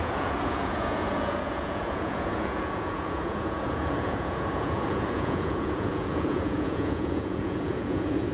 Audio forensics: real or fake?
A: fake